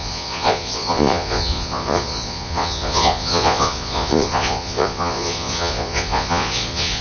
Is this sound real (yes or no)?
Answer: no